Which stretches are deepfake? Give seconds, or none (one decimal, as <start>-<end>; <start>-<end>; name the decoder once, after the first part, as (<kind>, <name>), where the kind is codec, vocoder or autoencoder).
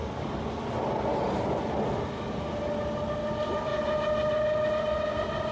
3.3-3.7 (vocoder, BigVGAN v2); 4.7-5.5